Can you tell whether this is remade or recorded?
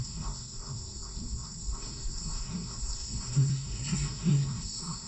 remade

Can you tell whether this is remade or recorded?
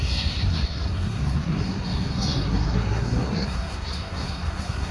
remade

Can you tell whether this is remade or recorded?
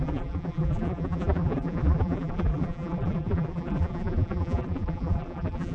remade